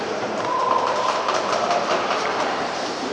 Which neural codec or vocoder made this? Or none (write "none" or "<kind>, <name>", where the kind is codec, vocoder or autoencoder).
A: vocoder, BigVGAN v2